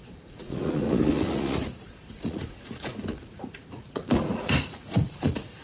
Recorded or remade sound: remade